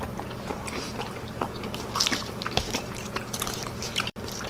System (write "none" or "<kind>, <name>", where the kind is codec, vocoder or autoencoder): vocoder, BigVGAN v2